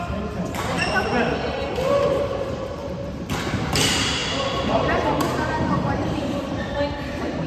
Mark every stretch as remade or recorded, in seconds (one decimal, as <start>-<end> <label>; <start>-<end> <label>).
0.0-4.2 remade; 4.2-4.7 recorded; 4.7-7.5 remade